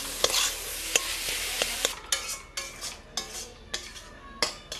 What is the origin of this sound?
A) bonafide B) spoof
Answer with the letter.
A